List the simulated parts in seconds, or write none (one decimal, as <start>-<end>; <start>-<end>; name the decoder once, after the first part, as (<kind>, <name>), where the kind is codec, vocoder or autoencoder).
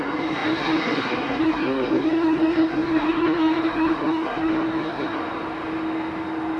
0.0-5.2 (codec, SNAC)